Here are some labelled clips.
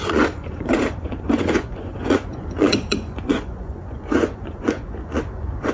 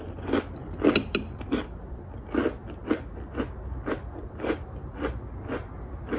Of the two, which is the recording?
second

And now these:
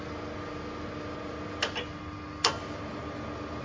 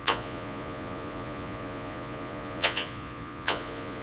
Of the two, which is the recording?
first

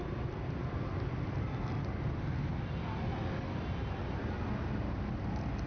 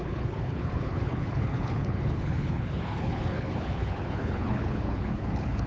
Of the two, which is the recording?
first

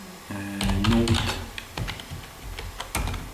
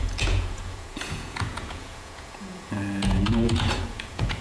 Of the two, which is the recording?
first